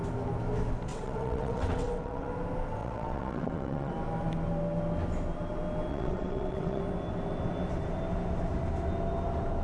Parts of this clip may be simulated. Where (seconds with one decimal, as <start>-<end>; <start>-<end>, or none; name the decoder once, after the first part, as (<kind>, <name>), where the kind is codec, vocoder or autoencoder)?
0.9-2.3 (vocoder, WaveNeXt); 2.8-3.9; 5.9-6.8